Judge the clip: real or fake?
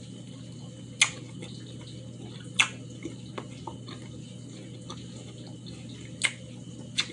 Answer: real